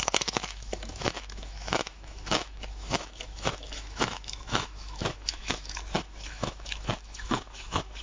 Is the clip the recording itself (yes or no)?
no